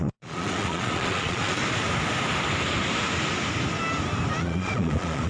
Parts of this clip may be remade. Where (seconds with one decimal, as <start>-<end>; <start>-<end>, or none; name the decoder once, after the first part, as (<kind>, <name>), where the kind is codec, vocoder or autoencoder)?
0.0-1.6 (vocoder, Vocos); 4.4-5.3